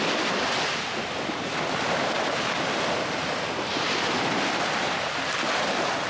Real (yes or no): yes